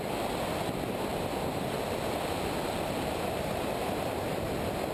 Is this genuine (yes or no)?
yes